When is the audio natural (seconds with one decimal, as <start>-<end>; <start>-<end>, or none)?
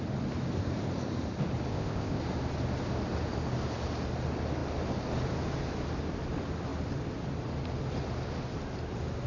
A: 0.0-1.7; 2.2-9.3